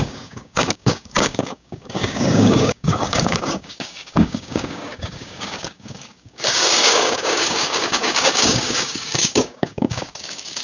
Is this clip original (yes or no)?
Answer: no